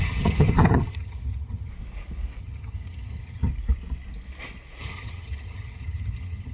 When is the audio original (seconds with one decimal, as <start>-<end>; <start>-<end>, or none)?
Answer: 1.7-2.4; 3.5-4.8